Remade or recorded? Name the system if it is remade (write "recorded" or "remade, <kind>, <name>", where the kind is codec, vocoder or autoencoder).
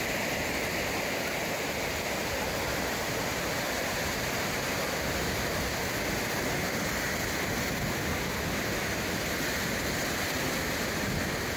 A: recorded